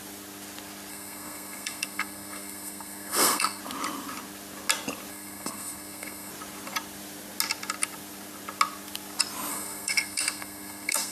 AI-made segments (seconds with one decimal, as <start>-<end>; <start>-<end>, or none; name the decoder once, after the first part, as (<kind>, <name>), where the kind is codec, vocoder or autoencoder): 0.9-3.6 (codec, SNAC); 5.1-6.3; 9.5-11.1